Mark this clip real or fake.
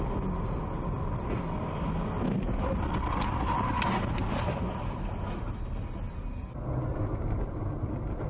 real